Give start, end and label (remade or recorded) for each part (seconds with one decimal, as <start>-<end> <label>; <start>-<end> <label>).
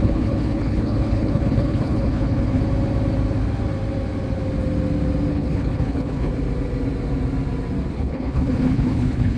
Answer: 0.0-2.6 remade; 2.6-5.3 recorded; 5.3-6.3 remade; 6.3-7.9 recorded; 7.9-9.4 remade